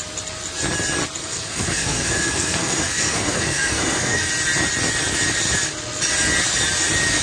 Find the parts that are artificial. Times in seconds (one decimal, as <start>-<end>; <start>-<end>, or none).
1.2-4.3